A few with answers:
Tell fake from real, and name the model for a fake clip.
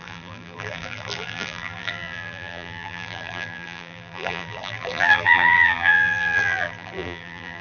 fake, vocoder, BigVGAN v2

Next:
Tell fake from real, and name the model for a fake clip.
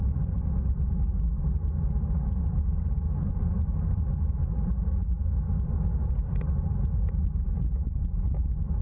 real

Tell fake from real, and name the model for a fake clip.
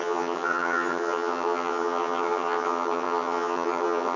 fake, vocoder, HiFi-GAN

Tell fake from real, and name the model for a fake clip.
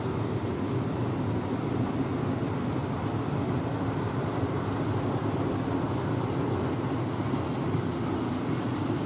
real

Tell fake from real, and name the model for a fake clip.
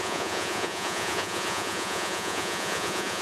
fake, vocoder, Vocos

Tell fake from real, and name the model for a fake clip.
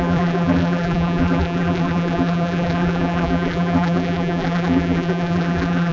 fake, vocoder, BigVGAN v2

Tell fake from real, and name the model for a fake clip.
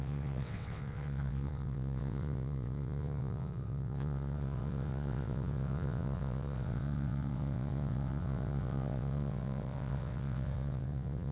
fake, vocoder, WaveNeXt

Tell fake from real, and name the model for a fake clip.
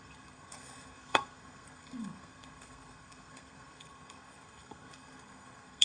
fake, codec, SNAC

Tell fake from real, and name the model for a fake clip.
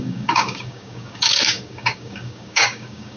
fake, codec, DAC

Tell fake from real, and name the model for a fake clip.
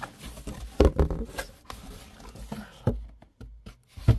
real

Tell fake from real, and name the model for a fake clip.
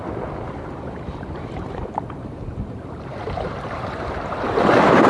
fake, vocoder, BigVGAN v2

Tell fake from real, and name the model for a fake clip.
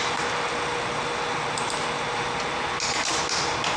real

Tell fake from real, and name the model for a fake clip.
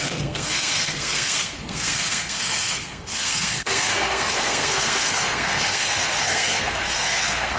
fake, codec, SNAC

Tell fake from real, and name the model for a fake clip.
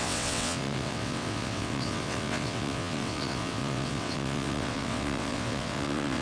fake, vocoder, WaveNeXt